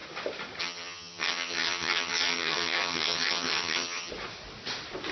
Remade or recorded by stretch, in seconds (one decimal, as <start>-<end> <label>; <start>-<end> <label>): 0.0-0.6 recorded; 0.6-4.1 remade; 4.1-5.1 recorded